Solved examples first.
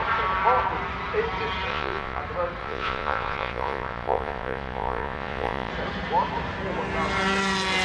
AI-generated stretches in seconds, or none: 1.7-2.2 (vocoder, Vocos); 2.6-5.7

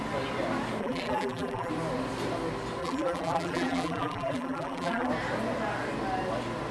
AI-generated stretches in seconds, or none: 0.8-1.7 (vocoder, BigVGAN v2); 2.8-5.1

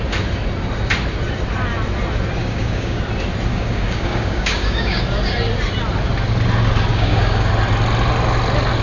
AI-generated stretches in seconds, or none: 2.4-3.0 (codec, DAC); 3.5-5.0; 6.9-7.5

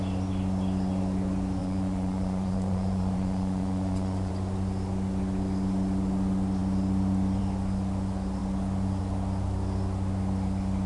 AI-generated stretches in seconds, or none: 1.6-4.3 (vocoder, Vocos)

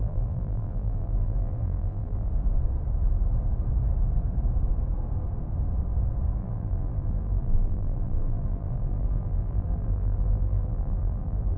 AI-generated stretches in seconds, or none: 0.0-2.3 (vocoder, BigVGAN v2); 6.4-11.6

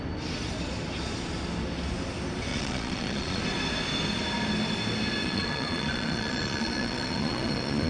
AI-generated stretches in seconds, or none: 2.5-3.4 (vocoder, Vocos); 5.2-7.9